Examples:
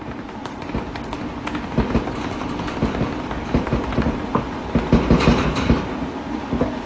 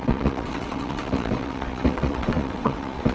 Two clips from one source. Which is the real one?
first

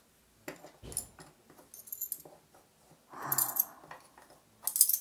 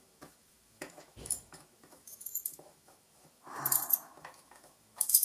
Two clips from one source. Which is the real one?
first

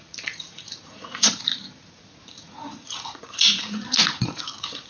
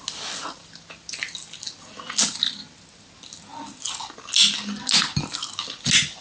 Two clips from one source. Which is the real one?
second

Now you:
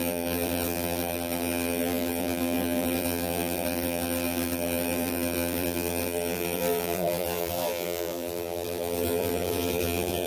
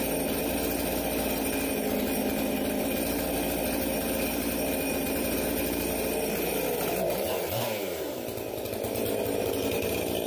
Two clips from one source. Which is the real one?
second